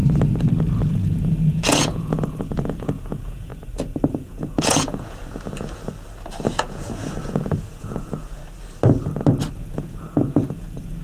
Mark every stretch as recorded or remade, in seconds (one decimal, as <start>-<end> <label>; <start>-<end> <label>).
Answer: 0.0-0.9 recorded; 0.9-3.5 remade; 3.5-4.1 recorded; 4.1-5.2 remade; 5.2-6.5 recorded; 6.5-8.4 remade; 8.4-9.6 recorded; 9.6-11.0 remade